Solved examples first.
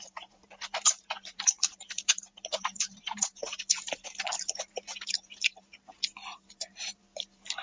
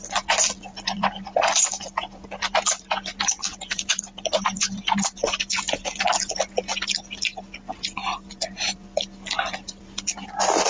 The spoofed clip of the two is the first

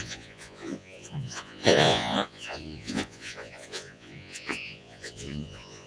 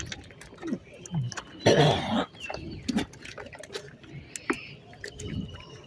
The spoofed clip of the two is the first